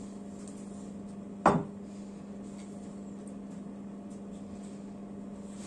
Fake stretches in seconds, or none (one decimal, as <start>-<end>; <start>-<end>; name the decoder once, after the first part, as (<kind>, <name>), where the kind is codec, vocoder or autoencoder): none